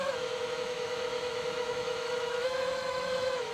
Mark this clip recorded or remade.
remade